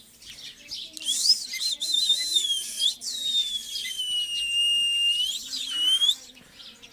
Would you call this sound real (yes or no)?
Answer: yes